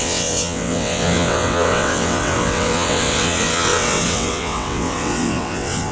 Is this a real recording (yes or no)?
no